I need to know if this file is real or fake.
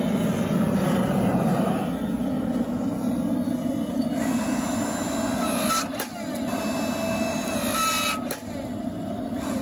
real